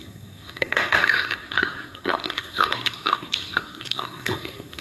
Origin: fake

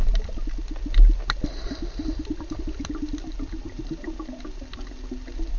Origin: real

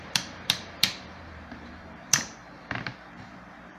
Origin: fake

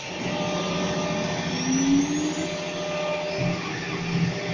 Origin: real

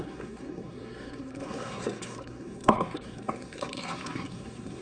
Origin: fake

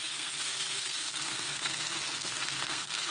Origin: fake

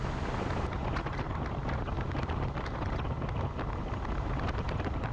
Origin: real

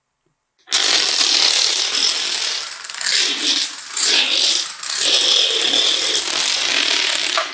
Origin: real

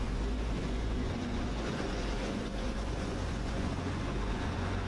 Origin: fake